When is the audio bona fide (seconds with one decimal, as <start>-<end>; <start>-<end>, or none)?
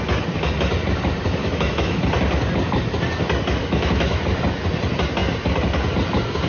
0.0-1.4; 2.0-3.6; 4.2-6.5